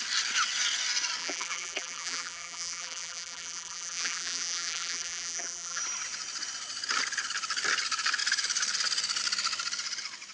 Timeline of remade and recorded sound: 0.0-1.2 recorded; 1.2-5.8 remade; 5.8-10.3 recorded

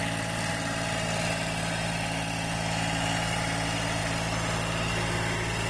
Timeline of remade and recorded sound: 0.0-5.7 recorded

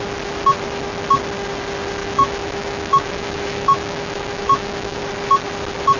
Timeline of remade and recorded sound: 0.0-2.0 recorded; 2.0-5.0 remade; 5.0-6.0 recorded